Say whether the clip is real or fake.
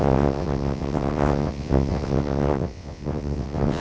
fake